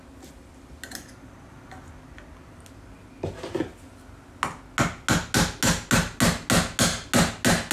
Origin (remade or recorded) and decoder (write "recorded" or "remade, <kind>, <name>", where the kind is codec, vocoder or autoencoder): recorded